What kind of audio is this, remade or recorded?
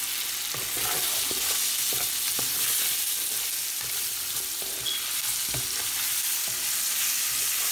recorded